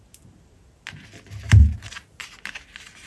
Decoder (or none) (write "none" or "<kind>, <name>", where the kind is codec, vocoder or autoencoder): none